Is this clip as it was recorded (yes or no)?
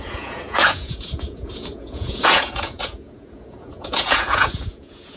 no